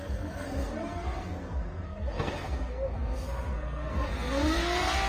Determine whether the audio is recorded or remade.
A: remade